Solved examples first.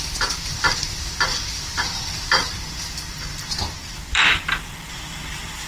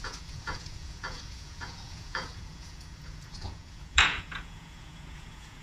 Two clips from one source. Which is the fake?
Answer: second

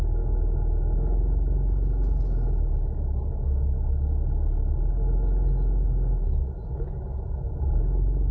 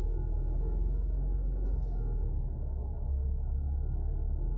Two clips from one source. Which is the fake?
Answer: second